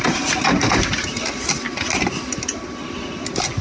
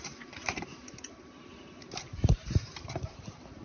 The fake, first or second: second